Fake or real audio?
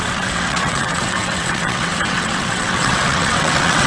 fake